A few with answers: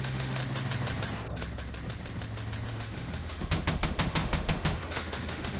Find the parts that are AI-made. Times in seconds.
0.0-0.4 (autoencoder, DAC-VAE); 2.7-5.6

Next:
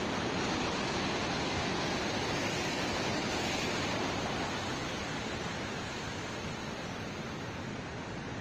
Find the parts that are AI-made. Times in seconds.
4.9-5.5 (vocoder, BigVGAN v2)

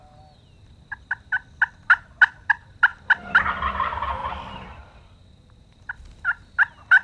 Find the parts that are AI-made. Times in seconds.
2.9-3.7 (vocoder, BigVGAN v2); 4.2-6.1

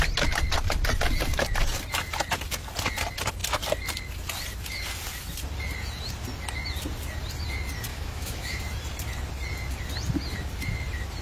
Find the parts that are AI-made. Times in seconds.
7.9-8.6 (autoencoder, DAC-VAE)

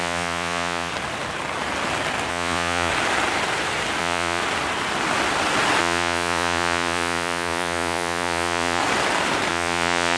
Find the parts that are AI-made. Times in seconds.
0.0-0.9 (vocoder, Vocos); 2.3-2.9; 4.0-4.4; 5.8-8.8; 9.5-10.2

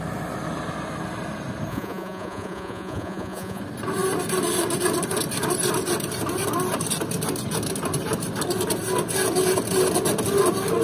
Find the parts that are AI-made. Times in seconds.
1.7-3.6 (vocoder, Vocos)